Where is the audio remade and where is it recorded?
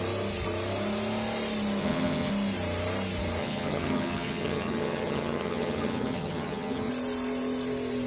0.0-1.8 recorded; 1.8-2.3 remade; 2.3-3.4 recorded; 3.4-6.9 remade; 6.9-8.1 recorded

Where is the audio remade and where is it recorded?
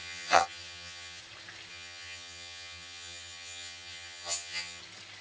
0.0-1.2 remade; 1.2-1.7 recorded; 1.7-4.8 remade; 4.8-5.2 recorded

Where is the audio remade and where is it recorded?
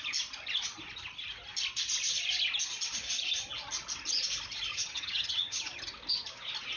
0.0-4.7 recorded; 4.7-5.8 remade; 5.8-6.8 recorded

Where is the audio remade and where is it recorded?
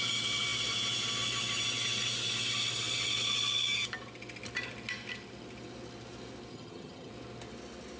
0.0-6.5 recorded; 6.5-7.1 remade; 7.1-8.0 recorded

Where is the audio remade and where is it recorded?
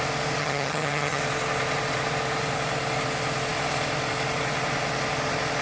0.0-0.4 recorded; 0.4-1.2 remade; 1.2-5.6 recorded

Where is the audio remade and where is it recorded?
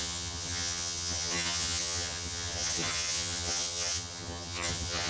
0.0-5.1 remade